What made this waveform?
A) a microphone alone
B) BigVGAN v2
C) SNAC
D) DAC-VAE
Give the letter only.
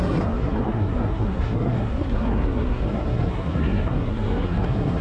C